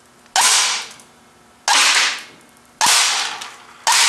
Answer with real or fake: real